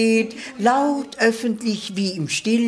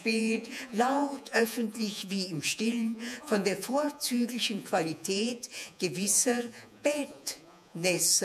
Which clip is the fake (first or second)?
second